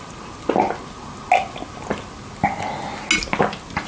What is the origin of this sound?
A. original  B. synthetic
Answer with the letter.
A